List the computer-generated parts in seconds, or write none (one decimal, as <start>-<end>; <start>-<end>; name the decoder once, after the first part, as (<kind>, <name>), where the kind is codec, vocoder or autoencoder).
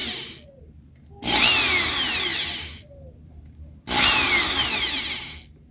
2.3-4.9 (vocoder, BigVGAN v2)